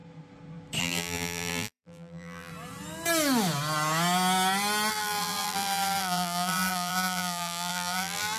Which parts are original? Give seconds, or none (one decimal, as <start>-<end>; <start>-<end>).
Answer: 0.0-0.8; 2.5-4.9